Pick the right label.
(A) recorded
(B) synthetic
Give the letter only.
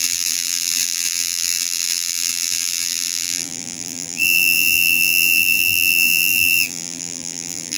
B